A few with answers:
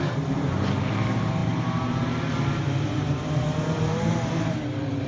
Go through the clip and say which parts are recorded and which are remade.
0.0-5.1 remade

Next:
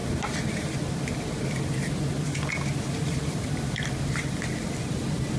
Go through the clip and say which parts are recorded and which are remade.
0.0-3.0 recorded; 3.0-5.4 remade